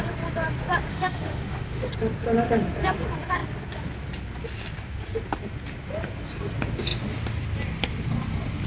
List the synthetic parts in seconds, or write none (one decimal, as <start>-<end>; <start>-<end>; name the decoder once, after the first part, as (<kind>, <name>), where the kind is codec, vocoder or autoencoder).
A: 0.9-1.9 (autoencoder, DAC-VAE)